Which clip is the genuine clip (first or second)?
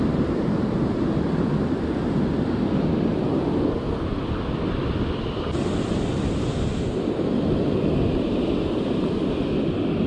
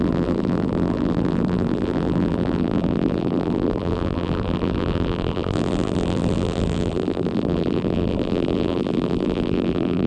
first